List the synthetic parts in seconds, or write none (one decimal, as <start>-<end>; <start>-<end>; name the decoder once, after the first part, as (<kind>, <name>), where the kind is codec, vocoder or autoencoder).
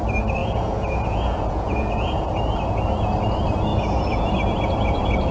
0.4-2.4 (vocoder, Vocos); 3.7-4.3